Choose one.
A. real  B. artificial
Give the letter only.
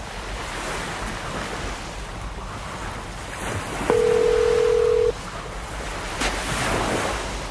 A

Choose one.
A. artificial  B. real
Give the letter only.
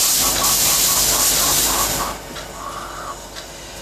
B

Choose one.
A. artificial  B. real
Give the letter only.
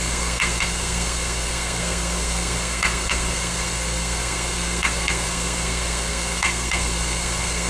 A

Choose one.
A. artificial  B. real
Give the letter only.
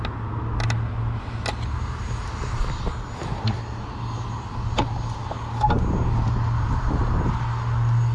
B